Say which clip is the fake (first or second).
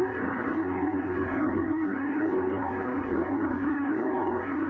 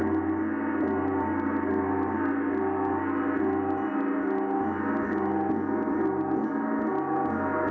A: first